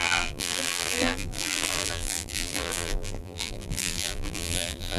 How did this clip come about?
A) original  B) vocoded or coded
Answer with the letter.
B